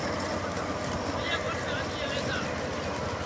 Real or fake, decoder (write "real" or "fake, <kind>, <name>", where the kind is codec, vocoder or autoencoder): real